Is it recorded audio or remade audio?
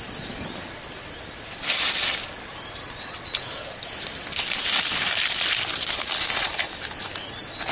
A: recorded